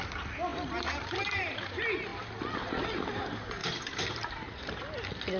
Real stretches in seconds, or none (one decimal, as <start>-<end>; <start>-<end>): 0.0-0.5; 1.7-3.6; 4.7-5.4